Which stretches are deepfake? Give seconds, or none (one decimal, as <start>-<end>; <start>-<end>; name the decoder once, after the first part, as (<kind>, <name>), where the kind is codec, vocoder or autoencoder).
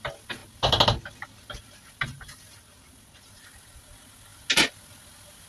none